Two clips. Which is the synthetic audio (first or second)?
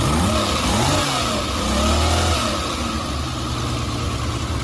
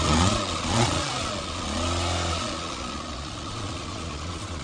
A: second